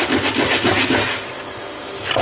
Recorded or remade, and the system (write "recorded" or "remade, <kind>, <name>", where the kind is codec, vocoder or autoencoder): recorded